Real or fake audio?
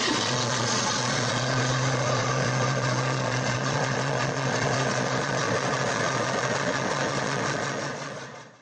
fake